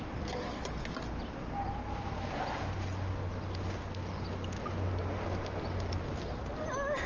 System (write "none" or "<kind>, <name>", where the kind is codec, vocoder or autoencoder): none